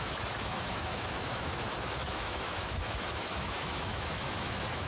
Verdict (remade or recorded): remade